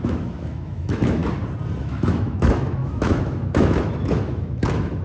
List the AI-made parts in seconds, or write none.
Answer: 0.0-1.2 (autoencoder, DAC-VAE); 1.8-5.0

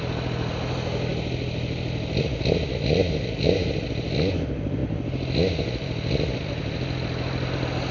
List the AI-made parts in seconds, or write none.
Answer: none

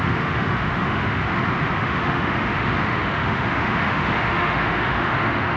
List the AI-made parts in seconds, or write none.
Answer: 0.0-1.2 (autoencoder, DAC-VAE); 1.8-5.6

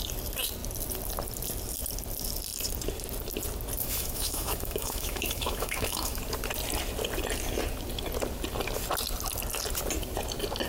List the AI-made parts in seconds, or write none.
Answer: 3.8-6.2 (autoencoder, DAC-VAE)

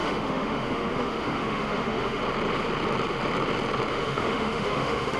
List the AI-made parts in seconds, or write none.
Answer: 0.0-2.2 (autoencoder, DAC-VAE); 3.9-5.2

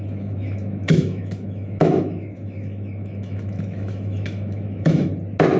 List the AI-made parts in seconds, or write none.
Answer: 0.0-5.1 (autoencoder, DAC-VAE)

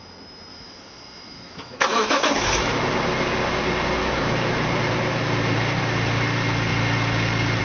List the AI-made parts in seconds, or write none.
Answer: 0.5-2.8 (autoencoder, DAC-VAE); 4.0-4.5